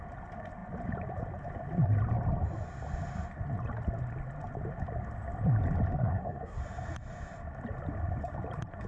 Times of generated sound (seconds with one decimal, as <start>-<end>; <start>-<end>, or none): 6.0-6.6